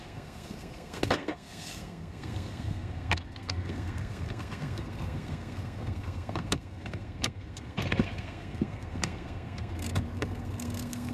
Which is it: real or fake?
fake